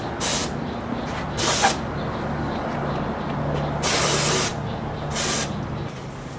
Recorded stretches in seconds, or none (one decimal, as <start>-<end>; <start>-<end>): 0.0-6.4